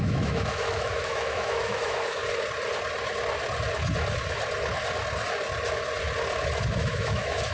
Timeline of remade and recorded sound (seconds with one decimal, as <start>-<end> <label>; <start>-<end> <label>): 0.0-2.2 remade; 2.2-6.7 recorded; 6.7-7.5 remade